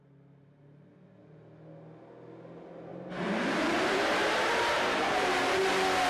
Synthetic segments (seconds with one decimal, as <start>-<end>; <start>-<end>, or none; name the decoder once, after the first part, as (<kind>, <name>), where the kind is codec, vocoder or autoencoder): 2.9-6.1 (vocoder, BigVGAN v2)